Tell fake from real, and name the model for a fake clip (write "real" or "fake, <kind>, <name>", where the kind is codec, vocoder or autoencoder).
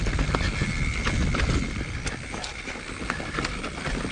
real